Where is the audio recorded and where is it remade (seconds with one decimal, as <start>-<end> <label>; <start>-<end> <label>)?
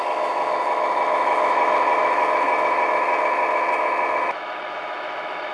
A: 0.0-5.5 remade